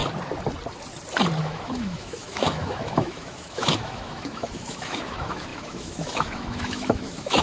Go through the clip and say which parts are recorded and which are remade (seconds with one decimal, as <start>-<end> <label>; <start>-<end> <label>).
0.0-1.4 recorded; 1.4-7.4 remade